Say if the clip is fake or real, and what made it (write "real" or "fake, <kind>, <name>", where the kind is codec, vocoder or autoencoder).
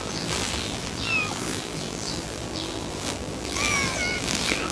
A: fake, vocoder, BigVGAN v2